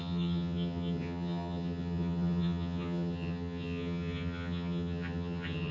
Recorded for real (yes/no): no